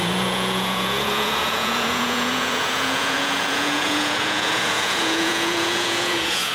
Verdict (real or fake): fake